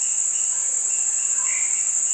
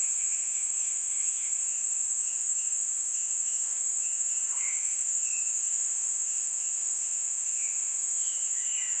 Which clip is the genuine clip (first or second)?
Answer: first